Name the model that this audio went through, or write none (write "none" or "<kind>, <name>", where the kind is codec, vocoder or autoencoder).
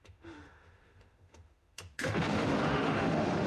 autoencoder, DAC-VAE